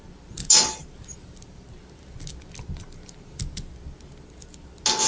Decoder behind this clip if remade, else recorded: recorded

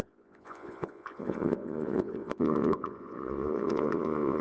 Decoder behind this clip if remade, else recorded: remade, vocoder, Vocos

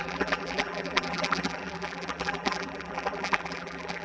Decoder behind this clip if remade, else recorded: remade, vocoder, BigVGAN v2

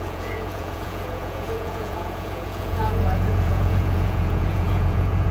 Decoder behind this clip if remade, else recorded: remade, vocoder, Vocos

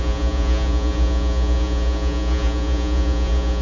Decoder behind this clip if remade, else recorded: remade, vocoder, Vocos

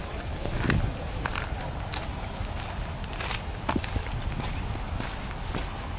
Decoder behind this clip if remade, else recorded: recorded